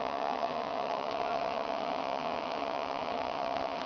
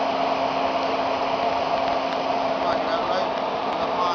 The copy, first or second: first